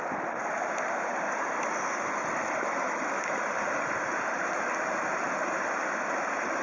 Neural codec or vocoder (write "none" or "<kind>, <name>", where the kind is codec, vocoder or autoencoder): none